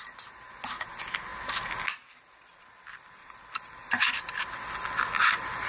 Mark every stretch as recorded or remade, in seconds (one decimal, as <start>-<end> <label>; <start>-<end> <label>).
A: 0.0-2.5 recorded; 2.5-4.1 remade; 4.1-5.7 recorded